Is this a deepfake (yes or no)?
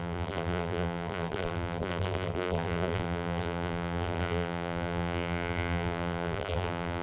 yes